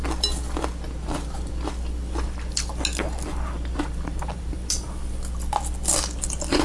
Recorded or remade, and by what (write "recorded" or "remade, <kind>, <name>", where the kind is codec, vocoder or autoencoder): recorded